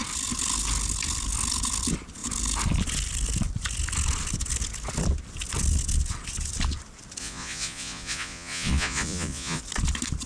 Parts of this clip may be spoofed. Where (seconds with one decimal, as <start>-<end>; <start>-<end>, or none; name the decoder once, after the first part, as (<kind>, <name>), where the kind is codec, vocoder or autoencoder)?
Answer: 7.2-9.6 (vocoder, Vocos)